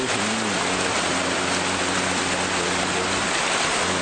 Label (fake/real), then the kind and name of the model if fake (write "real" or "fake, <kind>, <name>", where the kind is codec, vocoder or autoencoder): real